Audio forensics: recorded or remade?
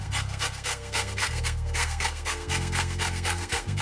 remade